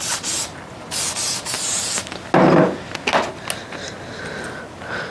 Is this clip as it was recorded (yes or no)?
yes